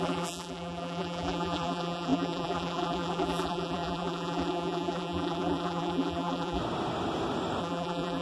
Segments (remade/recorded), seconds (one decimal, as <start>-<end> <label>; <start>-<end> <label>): 0.0-6.6 remade; 6.6-7.6 recorded; 7.6-8.2 remade